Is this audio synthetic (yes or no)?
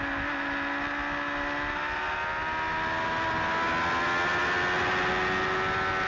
no